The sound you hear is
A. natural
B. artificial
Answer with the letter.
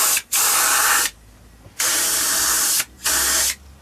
A